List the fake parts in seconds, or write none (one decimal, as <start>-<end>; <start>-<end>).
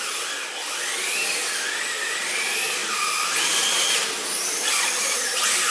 none